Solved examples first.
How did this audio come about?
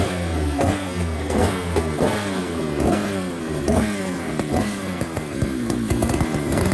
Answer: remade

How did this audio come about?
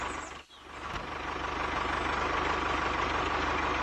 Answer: recorded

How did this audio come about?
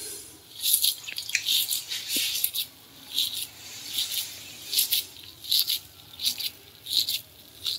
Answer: recorded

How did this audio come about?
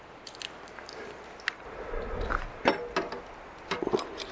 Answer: recorded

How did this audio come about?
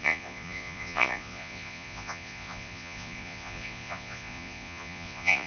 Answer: remade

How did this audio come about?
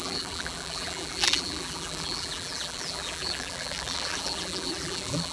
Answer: remade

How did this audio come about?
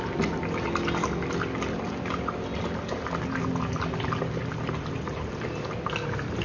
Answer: recorded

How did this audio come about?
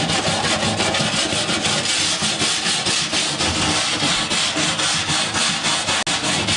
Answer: recorded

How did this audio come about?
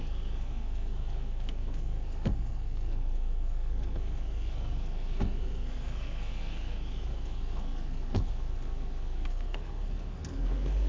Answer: remade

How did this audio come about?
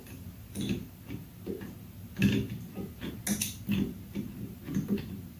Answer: recorded